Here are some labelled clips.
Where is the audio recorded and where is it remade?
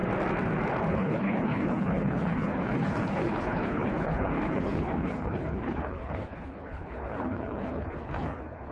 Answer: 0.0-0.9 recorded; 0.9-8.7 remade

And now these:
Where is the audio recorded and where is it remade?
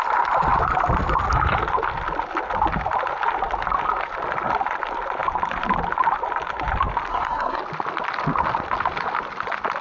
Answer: 0.0-7.1 recorded; 7.1-7.6 remade; 7.6-9.8 recorded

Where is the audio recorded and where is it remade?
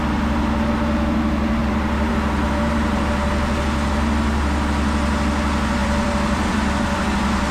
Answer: 0.0-1.6 recorded; 1.6-2.1 remade; 2.1-5.8 recorded; 5.8-7.0 remade; 7.0-7.5 recorded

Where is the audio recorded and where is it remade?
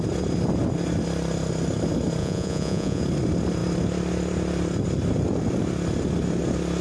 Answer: 0.0-2.2 recorded; 2.2-3.0 remade; 3.0-6.8 recorded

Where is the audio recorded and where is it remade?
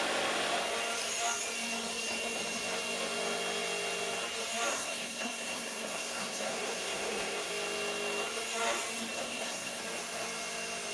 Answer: 0.0-4.7 recorded; 4.7-7.5 remade; 7.5-9.2 recorded; 9.2-9.8 remade; 9.8-10.9 recorded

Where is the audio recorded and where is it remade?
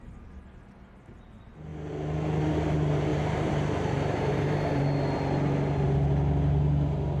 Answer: 0.0-3.1 recorded; 3.1-4.8 remade; 4.8-7.2 recorded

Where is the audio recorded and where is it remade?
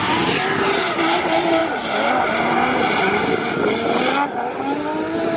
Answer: 0.0-5.4 recorded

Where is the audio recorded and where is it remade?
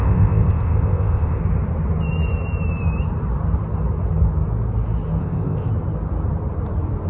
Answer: 0.0-1.4 remade; 1.4-5.2 recorded; 5.2-5.7 remade; 5.7-7.1 recorded